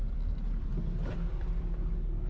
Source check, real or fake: fake